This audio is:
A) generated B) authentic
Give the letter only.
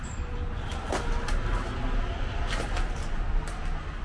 B